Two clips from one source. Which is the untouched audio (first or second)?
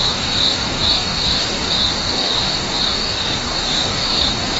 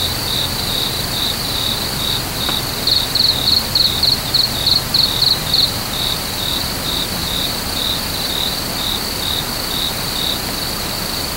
second